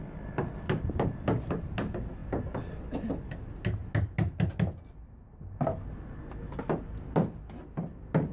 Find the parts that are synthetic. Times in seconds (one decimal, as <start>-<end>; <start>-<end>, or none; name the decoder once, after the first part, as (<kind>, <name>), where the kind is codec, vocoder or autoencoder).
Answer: none